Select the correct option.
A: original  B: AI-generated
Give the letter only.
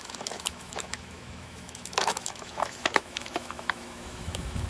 B